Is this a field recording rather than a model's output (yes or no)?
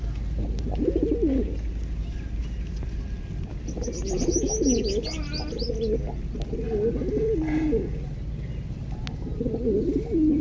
yes